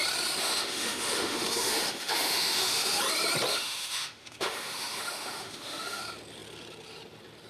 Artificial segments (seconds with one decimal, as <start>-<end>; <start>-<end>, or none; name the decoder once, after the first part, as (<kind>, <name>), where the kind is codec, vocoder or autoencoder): 0.4-3.0 (autoencoder, DAC-VAE); 3.5-6.0